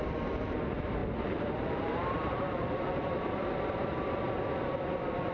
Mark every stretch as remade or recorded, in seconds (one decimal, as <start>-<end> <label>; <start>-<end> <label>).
0.0-1.0 recorded; 1.0-4.2 remade; 4.2-5.3 recorded